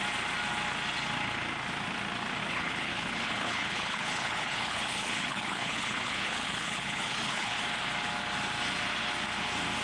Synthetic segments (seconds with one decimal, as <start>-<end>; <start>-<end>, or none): 2.4-7.6